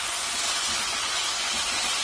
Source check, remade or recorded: remade